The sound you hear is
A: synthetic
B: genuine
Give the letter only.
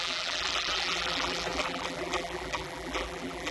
A